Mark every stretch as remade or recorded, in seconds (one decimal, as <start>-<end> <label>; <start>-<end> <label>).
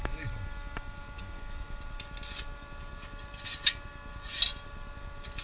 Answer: 0.0-5.4 recorded